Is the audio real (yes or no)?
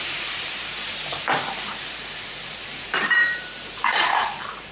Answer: no